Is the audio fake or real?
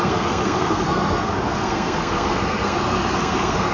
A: fake